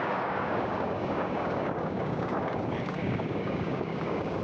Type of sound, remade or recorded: remade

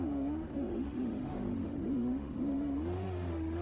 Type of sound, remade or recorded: remade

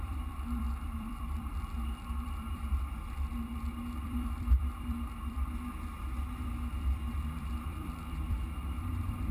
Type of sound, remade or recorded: remade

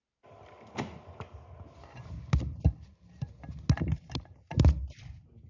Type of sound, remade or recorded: recorded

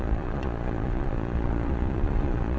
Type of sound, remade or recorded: remade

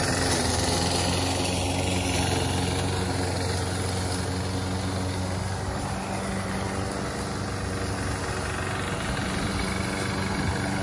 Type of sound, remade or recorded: recorded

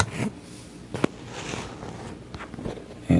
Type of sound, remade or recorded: recorded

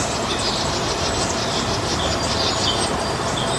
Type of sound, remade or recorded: recorded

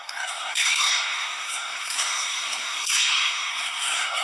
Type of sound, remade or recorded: remade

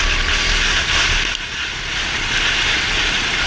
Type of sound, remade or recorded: recorded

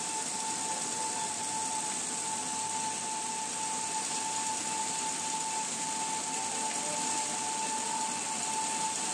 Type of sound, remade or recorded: recorded